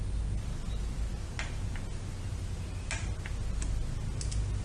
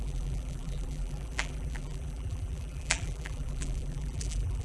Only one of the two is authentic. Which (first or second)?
first